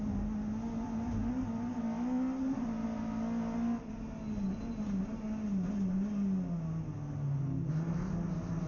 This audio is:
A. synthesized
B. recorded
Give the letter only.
B